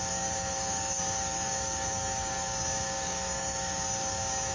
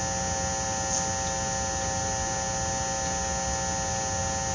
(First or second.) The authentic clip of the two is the second